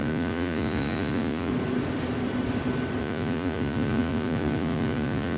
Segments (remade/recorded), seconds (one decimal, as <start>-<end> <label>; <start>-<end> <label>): 0.0-1.5 remade; 1.5-3.0 recorded; 3.0-5.4 remade